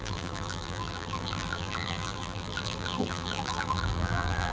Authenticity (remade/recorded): remade